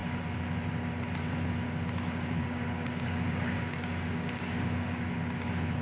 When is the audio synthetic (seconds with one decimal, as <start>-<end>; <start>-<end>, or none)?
2.4-5.2